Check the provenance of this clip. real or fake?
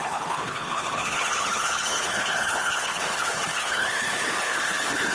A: fake